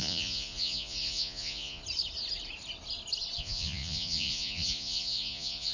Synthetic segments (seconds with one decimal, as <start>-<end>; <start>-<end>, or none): 0.0-1.8; 3.4-5.7